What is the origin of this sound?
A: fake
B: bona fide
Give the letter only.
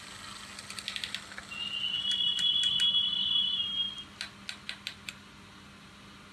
B